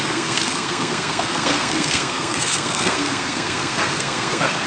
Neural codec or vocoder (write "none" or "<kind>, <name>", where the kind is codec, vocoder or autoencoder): codec, SNAC